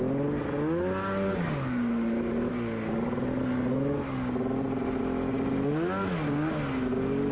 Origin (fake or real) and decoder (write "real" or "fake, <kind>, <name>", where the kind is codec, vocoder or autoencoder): real